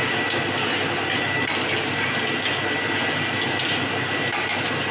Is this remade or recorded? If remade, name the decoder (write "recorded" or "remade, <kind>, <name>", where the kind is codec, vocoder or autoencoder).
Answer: recorded